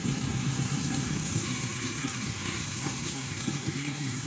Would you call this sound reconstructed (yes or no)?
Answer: yes